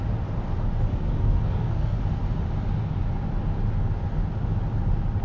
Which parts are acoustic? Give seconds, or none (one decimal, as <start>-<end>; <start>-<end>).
0.0-0.9; 2.0-5.2